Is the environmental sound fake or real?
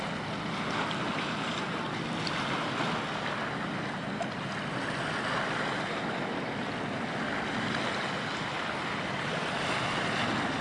real